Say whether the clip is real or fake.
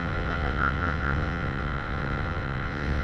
fake